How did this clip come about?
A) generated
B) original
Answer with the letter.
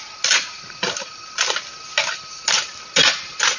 B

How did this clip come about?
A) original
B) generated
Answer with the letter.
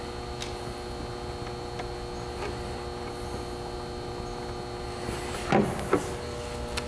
A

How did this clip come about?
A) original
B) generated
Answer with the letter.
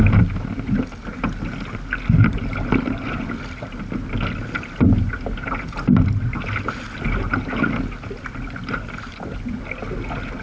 A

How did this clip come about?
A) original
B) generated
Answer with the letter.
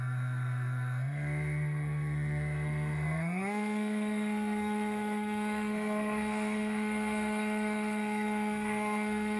B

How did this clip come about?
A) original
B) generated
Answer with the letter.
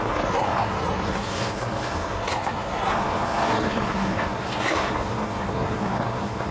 B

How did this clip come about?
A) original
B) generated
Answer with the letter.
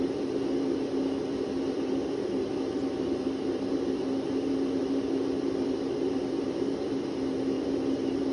A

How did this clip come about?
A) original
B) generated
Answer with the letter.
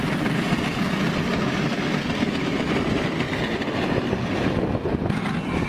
A